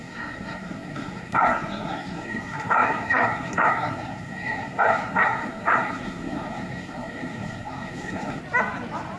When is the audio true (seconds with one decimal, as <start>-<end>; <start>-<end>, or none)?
8.4-9.2